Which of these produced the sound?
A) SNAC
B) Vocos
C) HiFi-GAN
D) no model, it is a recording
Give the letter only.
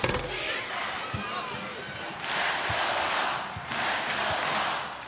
D